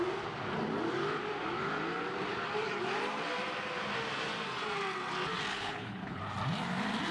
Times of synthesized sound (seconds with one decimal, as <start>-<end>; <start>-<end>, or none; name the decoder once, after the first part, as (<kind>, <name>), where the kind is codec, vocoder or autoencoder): 5.5-6.2 (codec, HILCodec)